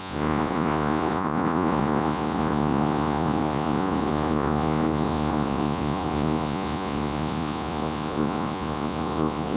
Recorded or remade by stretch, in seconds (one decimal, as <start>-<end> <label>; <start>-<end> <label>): 0.0-9.6 remade